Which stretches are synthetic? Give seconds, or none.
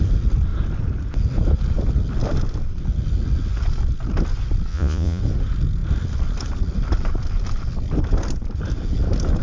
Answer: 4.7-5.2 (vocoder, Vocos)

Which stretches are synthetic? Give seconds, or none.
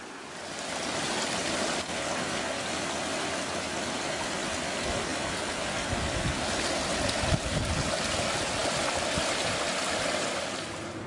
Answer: 3.1-4.2 (vocoder, BigVGAN v2)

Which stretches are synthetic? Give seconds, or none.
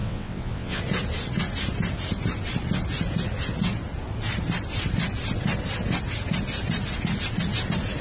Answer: 0.0-0.8 (vocoder, WaveNeXt)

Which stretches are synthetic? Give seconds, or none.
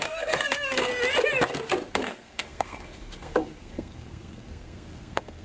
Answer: 0.0-0.9 (codec, SNAC); 1.9-5.4